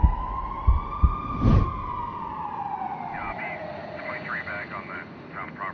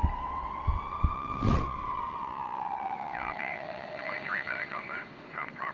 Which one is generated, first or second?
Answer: second